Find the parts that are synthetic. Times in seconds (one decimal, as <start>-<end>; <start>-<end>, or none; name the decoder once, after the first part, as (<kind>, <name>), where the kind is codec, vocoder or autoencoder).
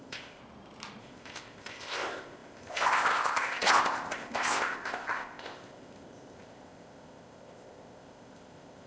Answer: 0.0-0.4 (codec, ZipCodec); 1.0-8.9